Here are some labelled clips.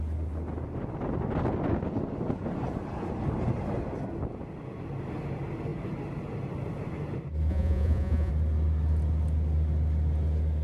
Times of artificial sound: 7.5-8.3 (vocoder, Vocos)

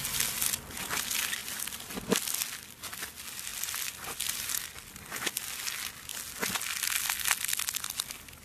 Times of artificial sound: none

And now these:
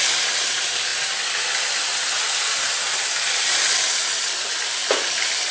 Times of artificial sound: none